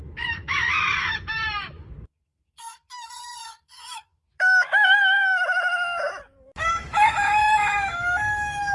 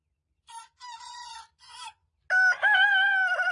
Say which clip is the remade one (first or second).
first